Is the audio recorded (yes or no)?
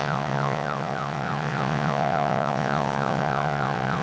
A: no